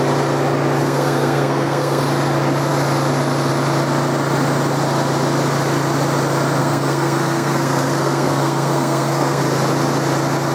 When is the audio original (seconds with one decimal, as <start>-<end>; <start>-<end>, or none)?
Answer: 0.0-0.8; 2.0-6.6; 9.4-10.5